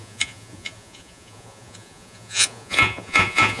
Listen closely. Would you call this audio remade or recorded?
remade